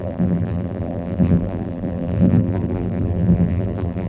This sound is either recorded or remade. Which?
remade